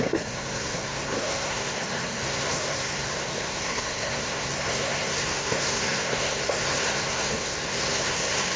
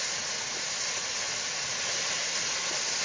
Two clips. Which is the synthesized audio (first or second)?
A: first